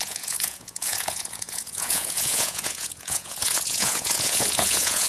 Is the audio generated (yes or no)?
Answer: yes